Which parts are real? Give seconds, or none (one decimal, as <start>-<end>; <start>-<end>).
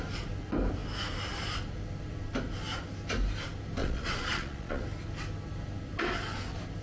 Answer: 0.0-3.8; 4.8-6.8